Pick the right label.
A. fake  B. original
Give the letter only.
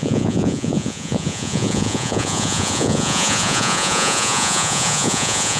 A